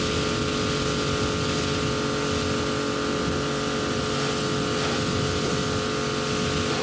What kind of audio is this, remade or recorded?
recorded